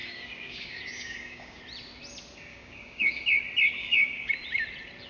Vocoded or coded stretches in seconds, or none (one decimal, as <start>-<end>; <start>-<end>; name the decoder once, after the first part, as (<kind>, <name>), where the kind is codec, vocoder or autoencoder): 0.0-1.6 (codec, DAC); 2.5-3.2; 3.8-4.3

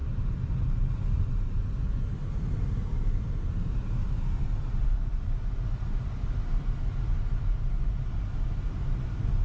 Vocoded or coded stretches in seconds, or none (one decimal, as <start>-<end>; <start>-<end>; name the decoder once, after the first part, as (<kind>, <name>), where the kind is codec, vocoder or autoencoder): none

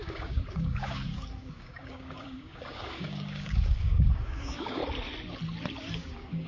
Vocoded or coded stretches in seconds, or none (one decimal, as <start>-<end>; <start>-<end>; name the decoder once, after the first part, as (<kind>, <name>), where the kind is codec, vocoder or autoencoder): 0.0-4.8 (codec, DAC); 5.9-6.5

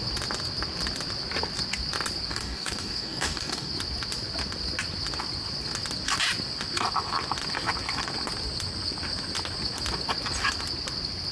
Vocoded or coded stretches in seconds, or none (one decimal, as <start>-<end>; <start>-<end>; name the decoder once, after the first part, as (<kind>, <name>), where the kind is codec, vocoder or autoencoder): 2.3-3.7 (codec, DAC)

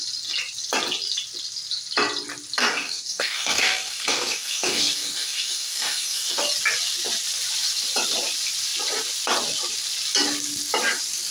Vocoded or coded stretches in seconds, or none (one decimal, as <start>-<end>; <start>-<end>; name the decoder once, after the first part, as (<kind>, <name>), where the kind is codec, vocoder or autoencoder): 2.6-6.4 (codec, DAC)